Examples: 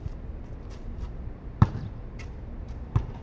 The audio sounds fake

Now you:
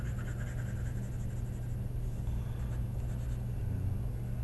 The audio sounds real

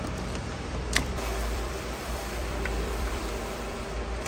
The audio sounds fake